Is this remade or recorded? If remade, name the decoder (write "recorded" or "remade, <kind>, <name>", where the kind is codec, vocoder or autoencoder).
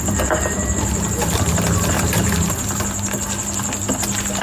recorded